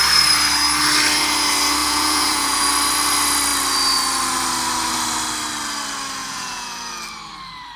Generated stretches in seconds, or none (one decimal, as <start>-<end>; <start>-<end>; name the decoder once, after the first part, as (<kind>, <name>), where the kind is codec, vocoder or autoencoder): 1.8-2.6 (vocoder, Vocos); 6.2-6.9